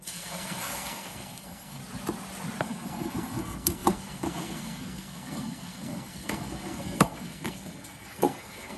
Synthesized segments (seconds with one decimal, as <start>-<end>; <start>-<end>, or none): 0.0-1.8; 2.6-8.8